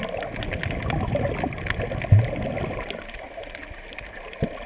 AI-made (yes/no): no